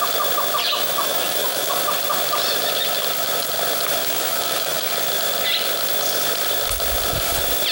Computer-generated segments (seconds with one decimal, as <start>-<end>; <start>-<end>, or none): 0.6-1.7; 4.0-4.9